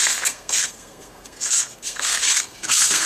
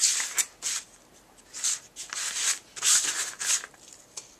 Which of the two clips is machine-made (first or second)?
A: first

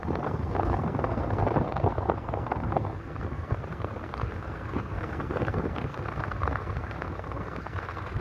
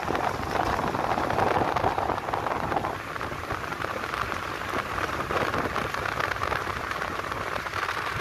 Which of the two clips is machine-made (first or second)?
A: first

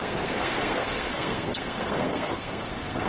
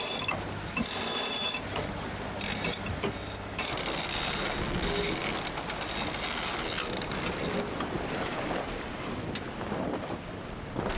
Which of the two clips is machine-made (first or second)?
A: first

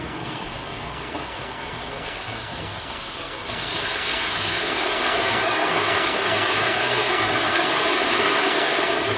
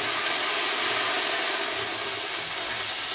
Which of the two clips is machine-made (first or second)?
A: first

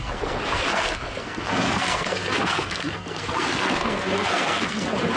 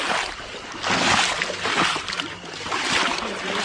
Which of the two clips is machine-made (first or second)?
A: first